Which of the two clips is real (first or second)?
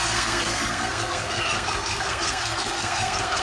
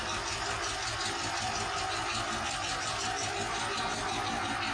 second